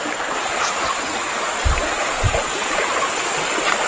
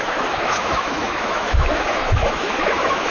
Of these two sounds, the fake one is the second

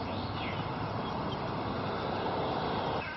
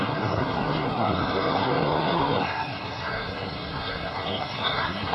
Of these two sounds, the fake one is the second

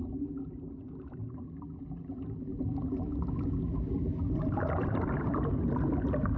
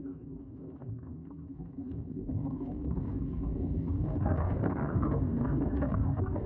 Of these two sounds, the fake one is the second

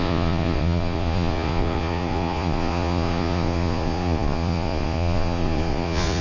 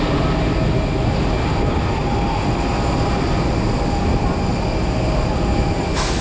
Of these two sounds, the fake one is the first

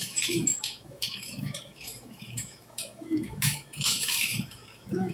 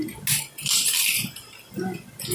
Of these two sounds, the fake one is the first